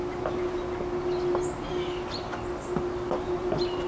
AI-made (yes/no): no